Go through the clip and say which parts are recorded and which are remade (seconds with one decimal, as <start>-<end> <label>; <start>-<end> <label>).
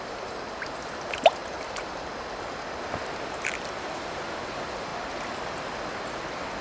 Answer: 0.0-6.6 recorded